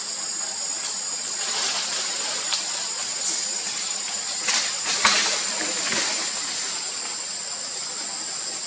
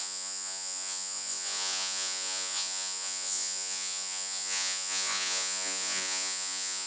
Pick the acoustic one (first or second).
first